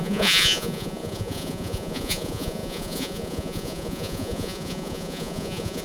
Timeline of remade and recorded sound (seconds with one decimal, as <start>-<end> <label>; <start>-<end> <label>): 0.0-5.8 remade